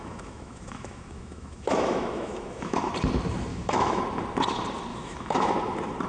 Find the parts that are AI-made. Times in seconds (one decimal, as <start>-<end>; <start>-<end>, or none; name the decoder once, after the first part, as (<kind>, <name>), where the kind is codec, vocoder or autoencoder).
0.0-2.9 (autoencoder, DAC-VAE); 3.5-4.0; 4.9-5.5